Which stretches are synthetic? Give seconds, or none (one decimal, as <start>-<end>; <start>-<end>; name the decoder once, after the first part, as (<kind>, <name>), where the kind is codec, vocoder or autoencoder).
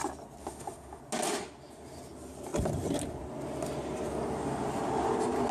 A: 0.4-1.0 (autoencoder, DAC-VAE)